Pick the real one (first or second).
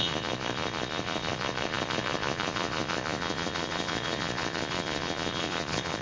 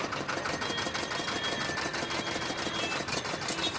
second